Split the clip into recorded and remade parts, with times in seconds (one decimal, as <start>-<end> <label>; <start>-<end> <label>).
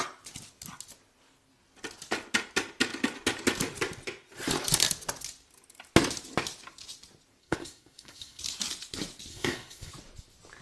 0.0-7.4 recorded; 7.4-8.4 remade; 8.4-9.3 recorded; 9.3-9.9 remade; 9.9-10.6 recorded